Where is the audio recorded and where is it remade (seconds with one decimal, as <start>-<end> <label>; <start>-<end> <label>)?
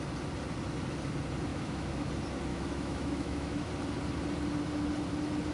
0.0-1.5 recorded; 1.5-2.1 remade; 2.1-2.5 recorded; 2.5-3.7 remade; 3.7-5.5 recorded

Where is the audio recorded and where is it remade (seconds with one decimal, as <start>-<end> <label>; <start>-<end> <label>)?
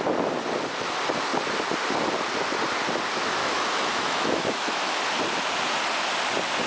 0.0-3.4 recorded; 3.4-5.0 remade; 5.0-6.7 recorded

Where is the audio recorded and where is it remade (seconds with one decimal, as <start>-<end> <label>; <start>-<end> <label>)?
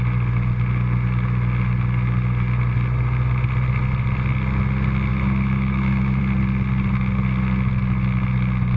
0.0-5.1 recorded; 5.1-6.2 remade; 6.2-8.8 recorded